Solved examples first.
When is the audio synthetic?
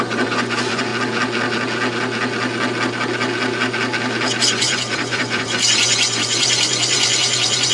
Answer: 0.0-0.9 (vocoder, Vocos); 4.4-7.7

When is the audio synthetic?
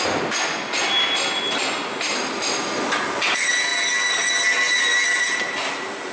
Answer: none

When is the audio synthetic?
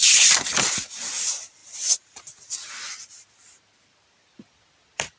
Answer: none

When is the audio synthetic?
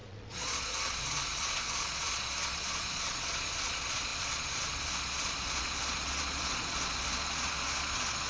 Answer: 0.0-8.3 (vocoder, Vocos)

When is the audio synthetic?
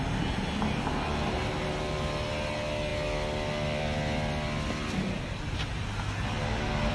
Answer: none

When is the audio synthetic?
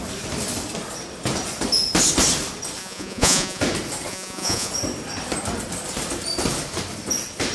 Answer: 2.8-3.6 (vocoder, Vocos); 4.1-4.7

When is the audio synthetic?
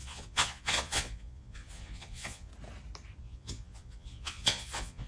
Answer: 0.0-2.5 (vocoder, Vocos); 3.2-5.1